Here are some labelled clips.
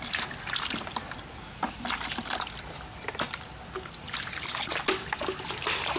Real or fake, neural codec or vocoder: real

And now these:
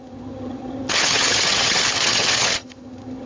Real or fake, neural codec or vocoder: fake, vocoder, HiFi-GAN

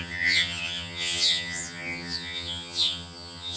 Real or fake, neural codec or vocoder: fake, vocoder, HiFi-GAN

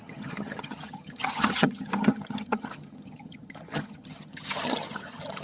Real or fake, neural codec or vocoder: fake, vocoder, HiFi-GAN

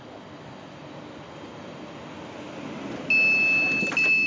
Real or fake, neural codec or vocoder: real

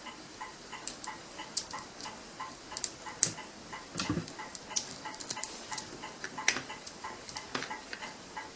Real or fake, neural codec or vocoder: real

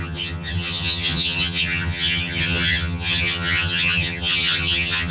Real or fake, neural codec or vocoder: fake, vocoder, HiFi-GAN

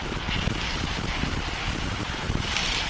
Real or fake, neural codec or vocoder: real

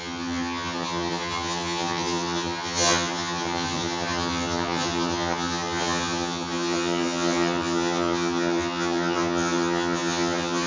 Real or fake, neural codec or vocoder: fake, vocoder, HiFi-GAN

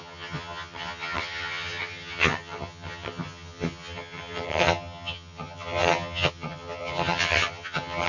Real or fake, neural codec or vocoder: fake, vocoder, HiFi-GAN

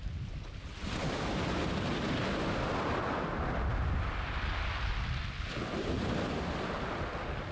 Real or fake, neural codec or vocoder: real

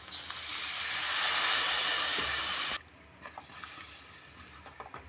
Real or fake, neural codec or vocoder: real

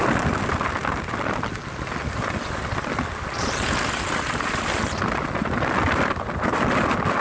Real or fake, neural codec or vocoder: real